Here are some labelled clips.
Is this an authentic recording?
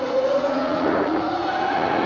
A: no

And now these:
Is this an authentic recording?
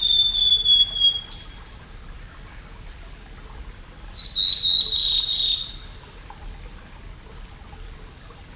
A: yes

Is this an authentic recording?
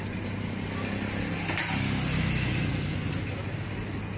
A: yes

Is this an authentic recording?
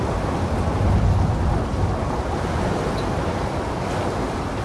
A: yes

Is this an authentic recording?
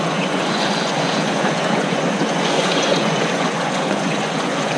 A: no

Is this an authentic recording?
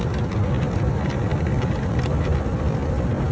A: yes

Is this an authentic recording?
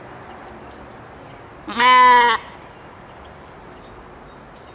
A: yes